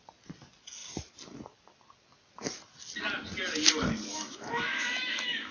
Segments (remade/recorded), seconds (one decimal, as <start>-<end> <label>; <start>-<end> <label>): 0.0-4.1 recorded; 4.1-5.5 remade